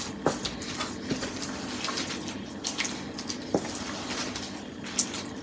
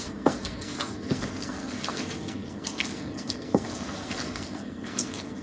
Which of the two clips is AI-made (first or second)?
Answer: second